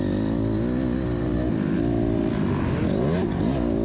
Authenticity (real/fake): real